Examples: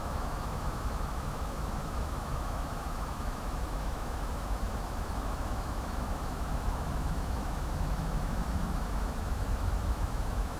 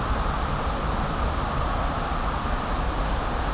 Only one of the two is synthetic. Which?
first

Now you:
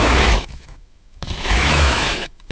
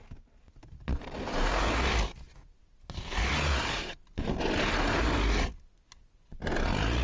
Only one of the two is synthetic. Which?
first